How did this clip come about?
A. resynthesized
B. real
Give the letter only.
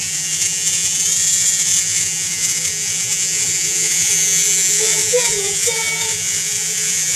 A